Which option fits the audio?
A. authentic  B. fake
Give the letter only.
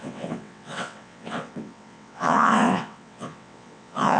B